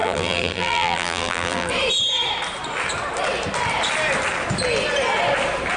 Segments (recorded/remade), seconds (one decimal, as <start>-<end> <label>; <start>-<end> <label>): 0.0-1.7 remade; 1.7-5.8 recorded